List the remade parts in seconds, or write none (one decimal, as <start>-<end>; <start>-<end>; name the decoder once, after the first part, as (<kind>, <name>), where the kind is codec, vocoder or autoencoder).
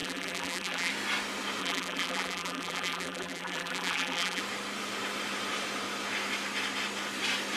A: 0.0-0.9 (vocoder, BigVGAN v2); 1.6-4.4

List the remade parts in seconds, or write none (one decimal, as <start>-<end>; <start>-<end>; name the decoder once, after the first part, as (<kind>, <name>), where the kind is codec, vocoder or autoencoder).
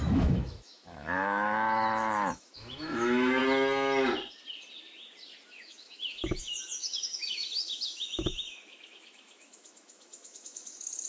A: 0.0-3.4 (autoencoder, DAC-VAE); 5.5-11.1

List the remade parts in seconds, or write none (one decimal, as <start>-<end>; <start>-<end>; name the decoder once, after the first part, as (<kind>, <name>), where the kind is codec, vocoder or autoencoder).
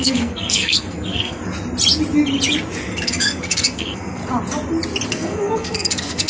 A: 0.0-1.4 (codec, SNAC); 2.9-4.2; 5.1-6.3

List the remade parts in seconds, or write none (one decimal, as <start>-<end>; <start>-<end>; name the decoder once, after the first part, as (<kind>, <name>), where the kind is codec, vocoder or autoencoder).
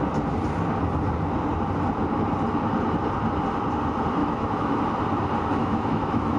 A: 4.2-4.8 (autoencoder, DAC-VAE); 5.6-6.4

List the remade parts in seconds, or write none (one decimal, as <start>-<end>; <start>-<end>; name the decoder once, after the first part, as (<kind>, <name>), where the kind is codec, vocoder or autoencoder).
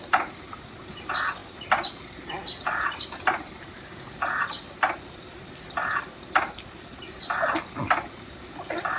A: none